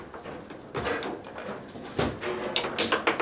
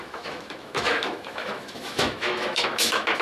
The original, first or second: first